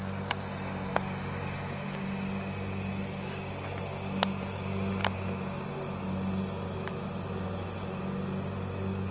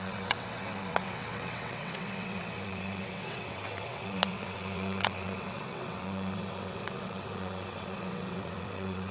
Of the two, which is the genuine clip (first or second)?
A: first